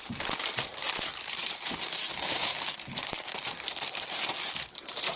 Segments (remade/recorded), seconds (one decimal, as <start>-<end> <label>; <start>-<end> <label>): 0.0-5.2 remade